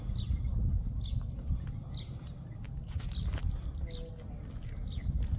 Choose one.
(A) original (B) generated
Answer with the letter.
A